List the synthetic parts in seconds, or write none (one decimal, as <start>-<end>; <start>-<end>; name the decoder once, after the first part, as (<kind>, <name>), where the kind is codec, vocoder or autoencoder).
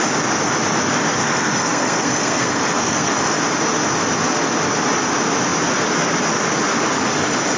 1.2-3.1 (codec, SNAC)